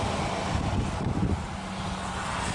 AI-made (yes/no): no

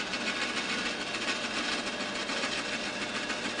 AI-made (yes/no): no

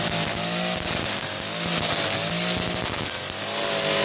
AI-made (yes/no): no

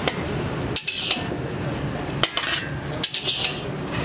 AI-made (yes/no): no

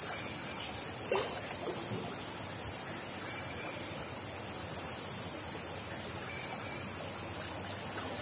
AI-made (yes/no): no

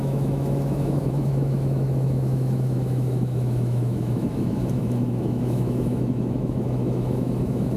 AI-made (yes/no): yes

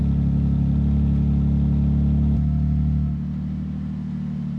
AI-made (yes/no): no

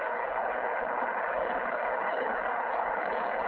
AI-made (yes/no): yes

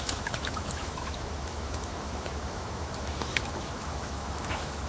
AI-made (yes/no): yes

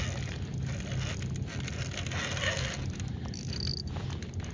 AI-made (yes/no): no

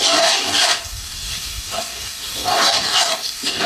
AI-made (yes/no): yes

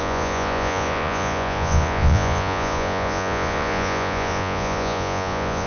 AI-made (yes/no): yes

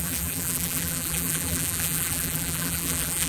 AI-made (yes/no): yes